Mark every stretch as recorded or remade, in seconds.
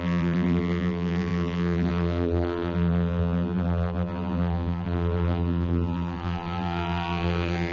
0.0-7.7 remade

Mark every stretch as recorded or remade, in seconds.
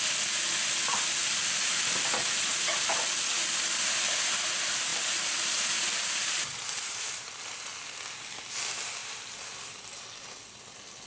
0.0-2.5 recorded; 2.5-3.1 remade; 3.1-4.9 recorded; 4.9-7.3 remade; 7.3-11.1 recorded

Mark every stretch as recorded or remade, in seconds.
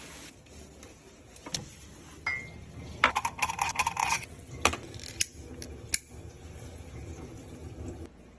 0.0-4.0 recorded; 4.0-4.5 remade; 4.5-8.4 recorded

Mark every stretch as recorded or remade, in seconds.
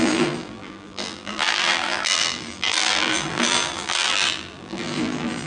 0.0-5.5 remade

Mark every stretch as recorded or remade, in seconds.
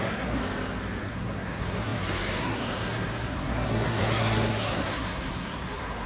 0.0-0.4 remade; 0.4-1.0 recorded; 1.0-6.1 remade